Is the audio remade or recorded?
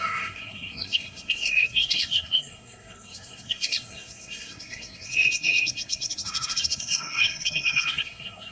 remade